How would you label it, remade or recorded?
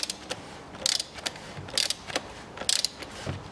recorded